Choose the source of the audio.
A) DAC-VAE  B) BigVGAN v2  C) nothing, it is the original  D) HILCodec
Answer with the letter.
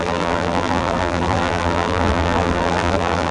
B